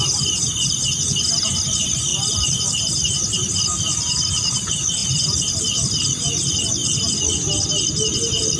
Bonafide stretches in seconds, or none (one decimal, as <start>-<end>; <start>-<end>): 0.0-8.6